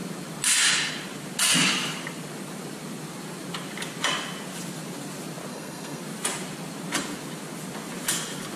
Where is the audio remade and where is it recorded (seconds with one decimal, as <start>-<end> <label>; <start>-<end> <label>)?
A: 0.0-5.5 recorded; 5.5-6.0 remade; 6.0-8.6 recorded